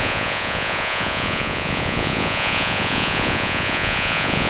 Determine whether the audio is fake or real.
fake